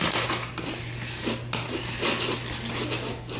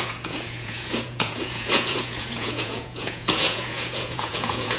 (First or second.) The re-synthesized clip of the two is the second